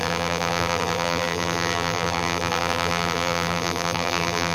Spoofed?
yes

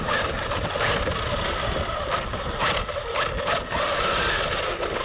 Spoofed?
no